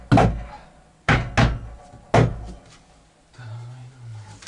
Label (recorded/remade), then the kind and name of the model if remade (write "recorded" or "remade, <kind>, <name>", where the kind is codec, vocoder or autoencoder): recorded